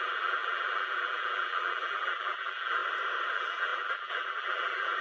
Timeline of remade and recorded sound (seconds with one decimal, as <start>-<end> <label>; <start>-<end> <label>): 0.0-2.8 remade; 2.8-3.3 recorded; 3.3-5.0 remade